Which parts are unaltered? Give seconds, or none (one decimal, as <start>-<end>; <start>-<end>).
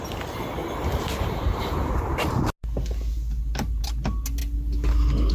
0.0-5.3